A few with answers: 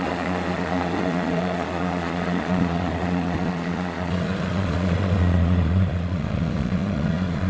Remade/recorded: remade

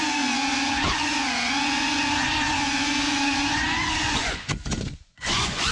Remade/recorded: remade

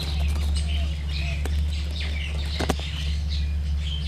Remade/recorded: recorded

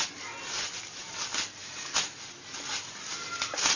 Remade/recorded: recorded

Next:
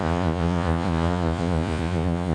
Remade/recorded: remade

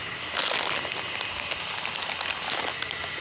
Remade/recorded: recorded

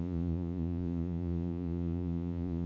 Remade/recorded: remade